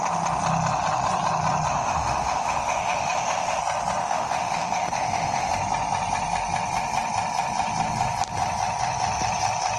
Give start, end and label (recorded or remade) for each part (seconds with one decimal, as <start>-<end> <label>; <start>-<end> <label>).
0.0-1.7 recorded; 1.7-3.6 remade; 3.6-4.0 recorded; 4.0-5.5 remade; 5.5-9.8 recorded

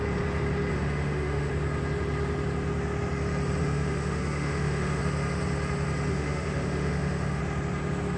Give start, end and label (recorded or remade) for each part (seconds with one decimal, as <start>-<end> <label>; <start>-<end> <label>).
0.0-0.7 recorded; 0.7-1.5 remade; 1.5-3.6 recorded; 3.6-5.0 remade; 5.0-6.1 recorded; 6.1-7.4 remade; 7.4-8.2 recorded

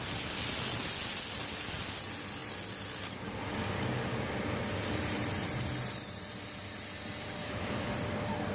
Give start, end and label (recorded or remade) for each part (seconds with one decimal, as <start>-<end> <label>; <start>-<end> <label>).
0.0-7.4 recorded; 7.4-7.9 remade; 7.9-8.5 recorded

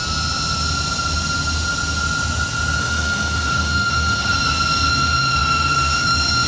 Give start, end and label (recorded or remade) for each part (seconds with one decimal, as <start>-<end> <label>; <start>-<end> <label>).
0.0-2.8 recorded; 2.8-4.3 remade; 4.3-4.9 recorded; 4.9-6.5 remade